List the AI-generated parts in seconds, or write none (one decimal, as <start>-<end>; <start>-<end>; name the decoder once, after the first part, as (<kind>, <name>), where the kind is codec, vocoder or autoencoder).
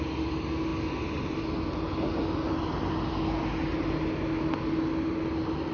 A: none